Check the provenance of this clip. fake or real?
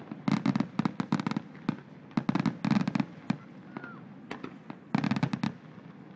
real